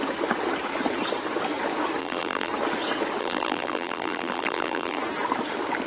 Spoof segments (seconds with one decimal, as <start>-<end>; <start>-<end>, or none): 2.0-2.5; 3.2-5.0